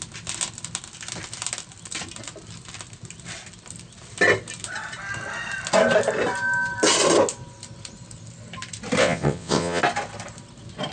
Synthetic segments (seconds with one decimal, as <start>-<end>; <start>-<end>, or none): 9.0-9.8